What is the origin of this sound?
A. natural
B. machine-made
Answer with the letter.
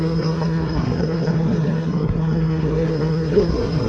B